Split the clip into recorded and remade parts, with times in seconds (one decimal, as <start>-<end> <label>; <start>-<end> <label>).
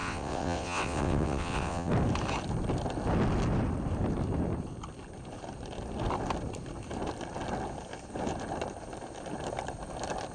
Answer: 0.0-1.9 remade; 1.9-10.3 recorded